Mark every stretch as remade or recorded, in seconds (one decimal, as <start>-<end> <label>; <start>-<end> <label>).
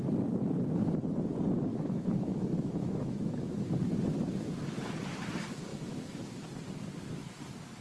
0.0-1.7 recorded; 1.7-3.7 remade; 3.7-5.7 recorded; 5.7-6.3 remade; 6.3-7.8 recorded